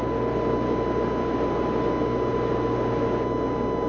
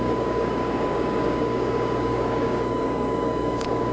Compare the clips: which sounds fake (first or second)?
second